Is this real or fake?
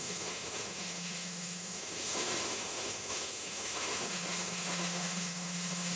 fake